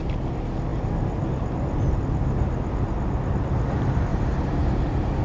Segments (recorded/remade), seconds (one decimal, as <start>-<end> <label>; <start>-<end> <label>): 0.0-4.1 recorded; 4.1-5.2 remade